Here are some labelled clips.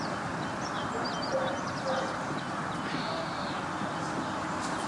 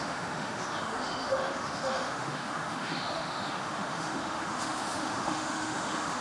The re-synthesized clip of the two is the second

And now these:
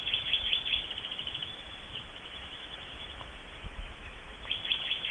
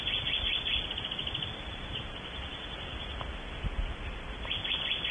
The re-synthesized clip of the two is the first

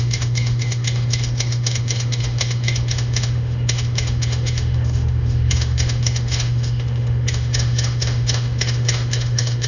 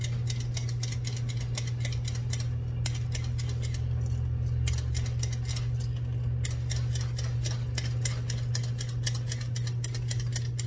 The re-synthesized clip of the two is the first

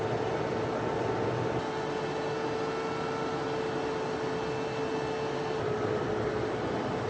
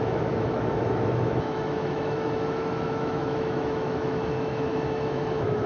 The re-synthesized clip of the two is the second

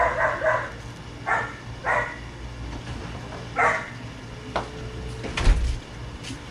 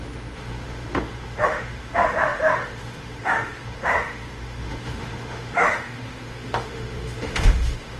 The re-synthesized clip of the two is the second